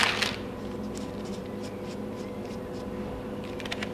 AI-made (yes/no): no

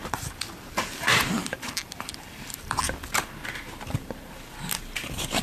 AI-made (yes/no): yes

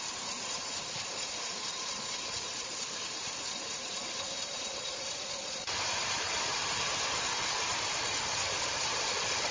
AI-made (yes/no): yes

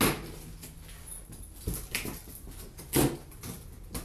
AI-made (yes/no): no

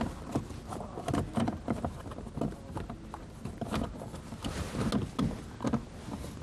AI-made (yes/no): no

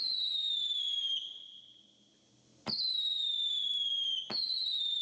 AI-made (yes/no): no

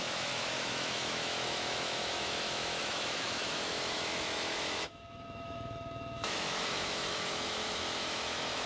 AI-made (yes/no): yes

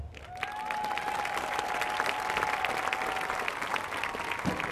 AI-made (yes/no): no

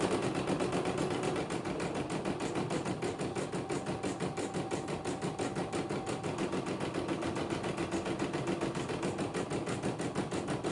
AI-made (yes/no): no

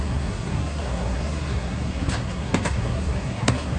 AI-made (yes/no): yes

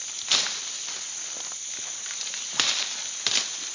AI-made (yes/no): no